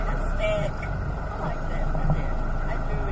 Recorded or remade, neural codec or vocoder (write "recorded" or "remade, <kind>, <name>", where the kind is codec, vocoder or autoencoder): recorded